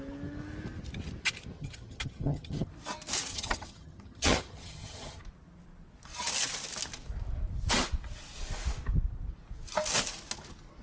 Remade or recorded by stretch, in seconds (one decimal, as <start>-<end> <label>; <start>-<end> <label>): 0.0-1.6 recorded; 1.6-2.7 remade; 2.7-3.3 recorded; 3.3-5.2 remade; 5.2-10.8 recorded